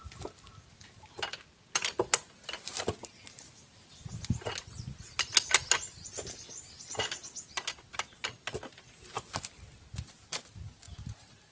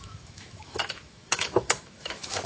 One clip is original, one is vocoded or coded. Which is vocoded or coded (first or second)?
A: second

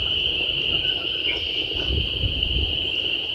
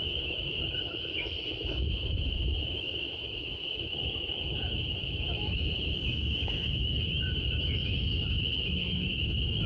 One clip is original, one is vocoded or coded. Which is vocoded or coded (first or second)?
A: second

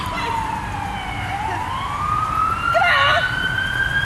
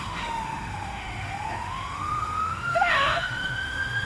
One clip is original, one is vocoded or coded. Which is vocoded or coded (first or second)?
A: second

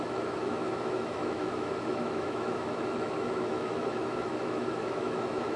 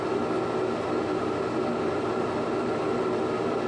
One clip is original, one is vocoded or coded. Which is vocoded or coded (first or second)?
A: first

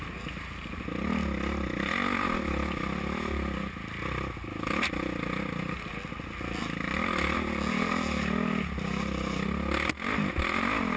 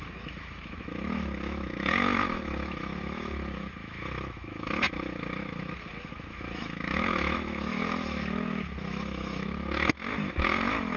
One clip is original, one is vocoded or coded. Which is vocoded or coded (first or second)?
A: second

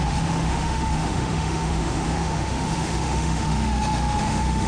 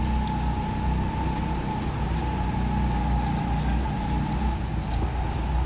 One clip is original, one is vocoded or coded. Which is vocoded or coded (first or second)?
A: first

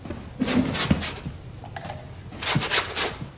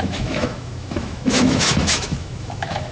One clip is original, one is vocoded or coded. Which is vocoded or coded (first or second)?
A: second